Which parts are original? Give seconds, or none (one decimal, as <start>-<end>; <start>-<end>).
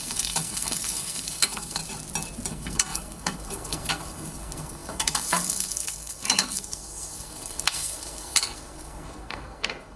1.8-2.5